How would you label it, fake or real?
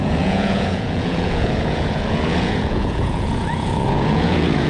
fake